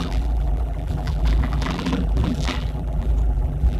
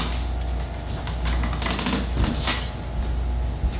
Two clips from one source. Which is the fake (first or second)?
first